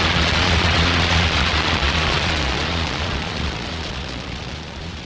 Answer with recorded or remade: remade